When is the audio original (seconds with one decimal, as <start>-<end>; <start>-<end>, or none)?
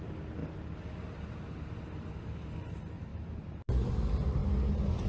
0.0-5.1